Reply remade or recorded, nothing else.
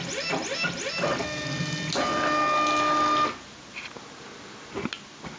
recorded